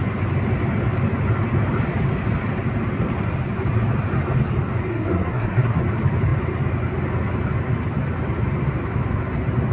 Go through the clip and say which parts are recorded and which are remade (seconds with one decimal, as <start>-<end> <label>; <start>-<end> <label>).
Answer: 0.0-4.9 recorded; 4.9-5.8 remade; 5.8-9.7 recorded